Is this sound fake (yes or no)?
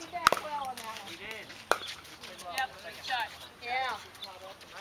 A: no